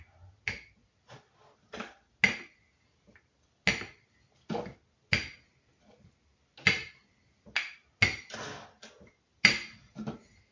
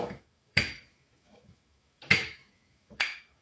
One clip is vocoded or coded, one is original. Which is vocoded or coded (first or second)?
second